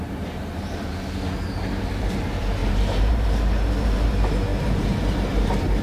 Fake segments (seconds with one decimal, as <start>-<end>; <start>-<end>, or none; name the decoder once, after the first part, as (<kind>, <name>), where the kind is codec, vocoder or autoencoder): 0.0-0.9 (vocoder, BigVGAN v2); 1.5-5.8